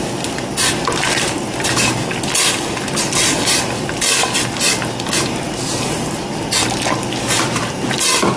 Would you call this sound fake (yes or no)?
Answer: no